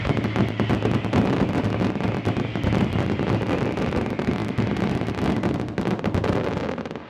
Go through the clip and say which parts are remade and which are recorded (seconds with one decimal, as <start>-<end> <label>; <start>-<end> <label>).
0.0-7.1 recorded